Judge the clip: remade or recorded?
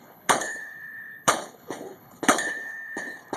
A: remade